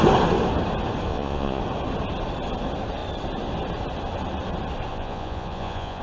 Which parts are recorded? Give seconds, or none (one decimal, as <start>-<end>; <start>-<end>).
0.0-1.1; 1.6-4.9